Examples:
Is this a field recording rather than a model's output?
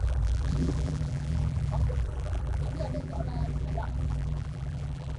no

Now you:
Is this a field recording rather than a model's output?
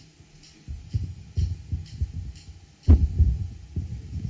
yes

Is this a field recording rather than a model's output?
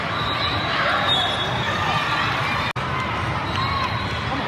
yes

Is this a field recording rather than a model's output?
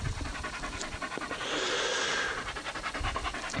yes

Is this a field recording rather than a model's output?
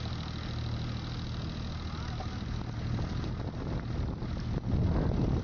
yes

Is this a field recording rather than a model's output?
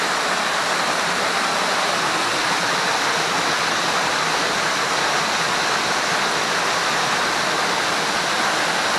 yes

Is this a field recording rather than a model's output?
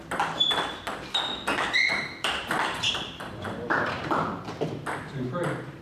no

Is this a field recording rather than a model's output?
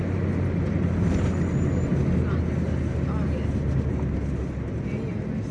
yes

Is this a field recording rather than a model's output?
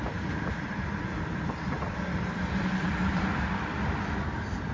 no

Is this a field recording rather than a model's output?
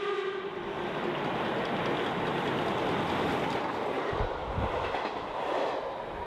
yes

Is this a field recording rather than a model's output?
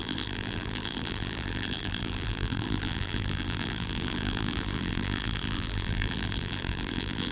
no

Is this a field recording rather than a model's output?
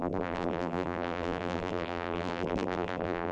no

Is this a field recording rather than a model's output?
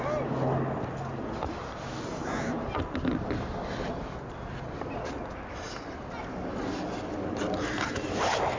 yes